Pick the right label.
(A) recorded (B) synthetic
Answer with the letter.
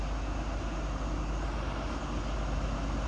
A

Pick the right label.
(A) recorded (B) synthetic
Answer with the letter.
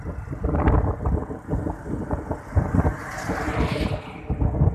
A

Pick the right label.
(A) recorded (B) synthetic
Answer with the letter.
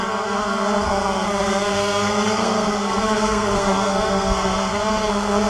B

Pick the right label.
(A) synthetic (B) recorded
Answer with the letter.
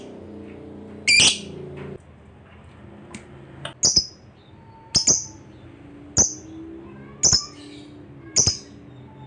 B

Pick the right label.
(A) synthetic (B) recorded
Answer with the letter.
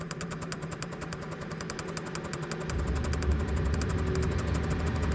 B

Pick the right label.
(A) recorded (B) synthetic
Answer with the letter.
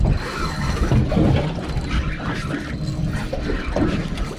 A